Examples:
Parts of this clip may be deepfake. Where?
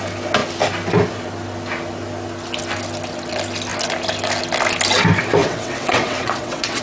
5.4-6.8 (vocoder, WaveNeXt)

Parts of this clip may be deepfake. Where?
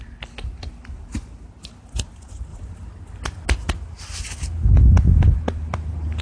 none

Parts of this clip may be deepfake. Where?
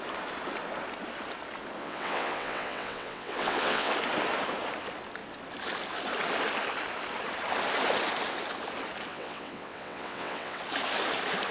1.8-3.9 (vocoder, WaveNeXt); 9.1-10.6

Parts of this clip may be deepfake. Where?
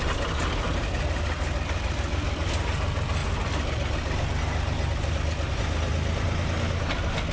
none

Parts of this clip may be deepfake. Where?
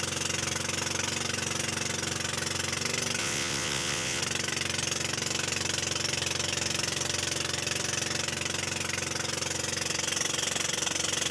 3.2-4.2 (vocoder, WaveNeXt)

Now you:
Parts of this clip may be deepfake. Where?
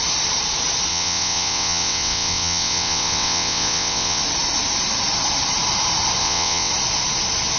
0.9-4.2 (vocoder, WaveNeXt); 6.2-6.7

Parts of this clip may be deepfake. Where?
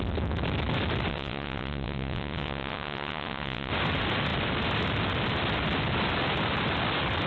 1.1-3.7 (vocoder, WaveNeXt)